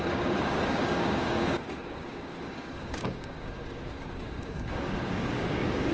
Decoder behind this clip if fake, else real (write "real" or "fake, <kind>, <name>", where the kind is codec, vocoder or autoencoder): fake, codec, DAC